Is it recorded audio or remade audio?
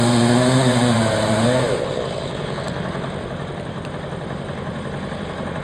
remade